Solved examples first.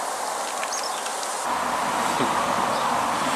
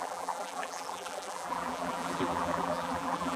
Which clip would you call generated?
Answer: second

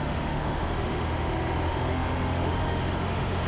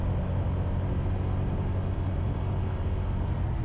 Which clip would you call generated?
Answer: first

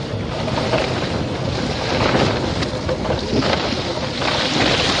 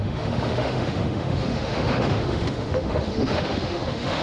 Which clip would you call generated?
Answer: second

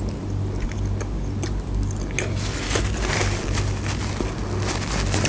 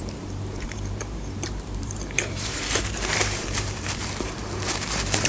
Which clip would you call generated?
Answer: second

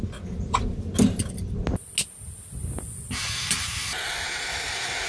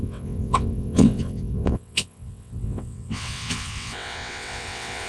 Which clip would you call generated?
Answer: second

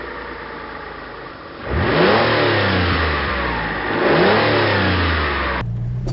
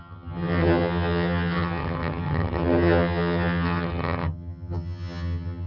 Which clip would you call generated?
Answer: second